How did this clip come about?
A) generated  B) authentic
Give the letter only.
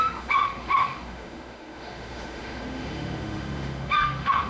A